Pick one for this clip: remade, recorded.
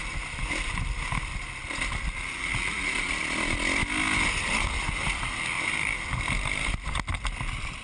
recorded